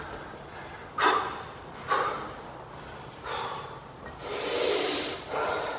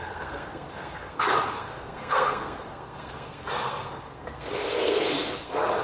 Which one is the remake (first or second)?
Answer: second